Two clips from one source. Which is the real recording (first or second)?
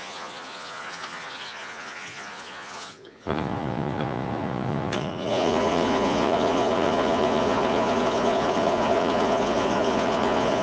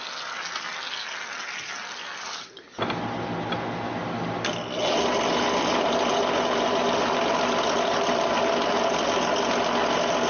second